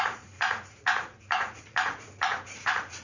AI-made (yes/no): yes